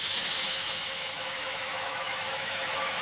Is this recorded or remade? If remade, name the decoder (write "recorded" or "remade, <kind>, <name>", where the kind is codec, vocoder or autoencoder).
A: remade, autoencoder, DAC-VAE